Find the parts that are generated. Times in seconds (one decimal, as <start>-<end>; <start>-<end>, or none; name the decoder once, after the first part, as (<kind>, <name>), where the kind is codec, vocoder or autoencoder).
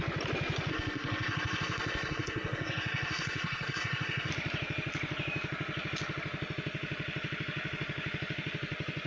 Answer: 0.7-4.3 (codec, SNAC)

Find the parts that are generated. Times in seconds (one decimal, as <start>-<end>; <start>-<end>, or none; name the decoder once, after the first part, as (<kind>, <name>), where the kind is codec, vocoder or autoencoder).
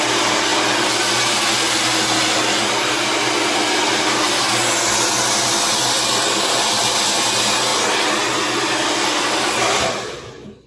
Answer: none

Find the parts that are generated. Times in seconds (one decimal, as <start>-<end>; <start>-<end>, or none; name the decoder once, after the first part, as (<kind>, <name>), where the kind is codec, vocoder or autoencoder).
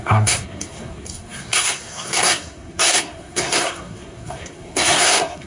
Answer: 0.0-5.5 (codec, SNAC)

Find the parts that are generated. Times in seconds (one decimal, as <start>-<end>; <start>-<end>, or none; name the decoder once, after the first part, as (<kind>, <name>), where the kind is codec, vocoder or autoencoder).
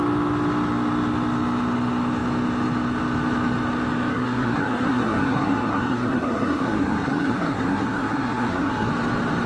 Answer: 4.1-8.9 (codec, SNAC)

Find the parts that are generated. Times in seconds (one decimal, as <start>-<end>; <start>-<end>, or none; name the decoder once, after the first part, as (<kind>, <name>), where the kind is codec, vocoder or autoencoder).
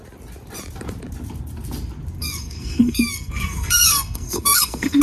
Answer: 2.2-5.0 (codec, SNAC)